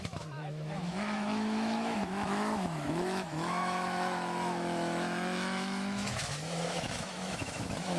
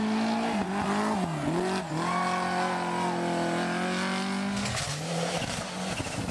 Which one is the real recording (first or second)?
second